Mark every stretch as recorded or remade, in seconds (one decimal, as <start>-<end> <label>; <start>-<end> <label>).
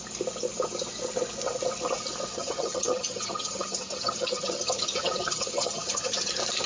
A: 0.0-2.3 recorded; 2.3-6.3 remade; 6.3-6.7 recorded